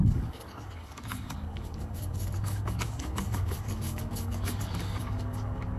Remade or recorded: remade